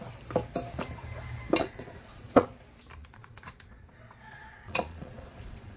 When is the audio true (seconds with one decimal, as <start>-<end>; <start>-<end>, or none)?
0.0-1.6; 2.5-3.0